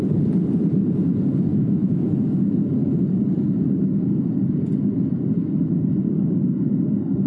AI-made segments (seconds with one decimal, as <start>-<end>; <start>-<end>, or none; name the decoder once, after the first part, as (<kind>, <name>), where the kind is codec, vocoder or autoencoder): 1.5-2.1 (autoencoder, DAC-VAE)